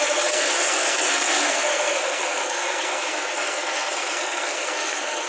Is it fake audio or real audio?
fake